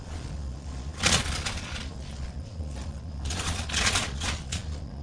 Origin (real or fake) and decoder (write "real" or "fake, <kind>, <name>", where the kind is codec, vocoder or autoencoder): fake, vocoder, Vocos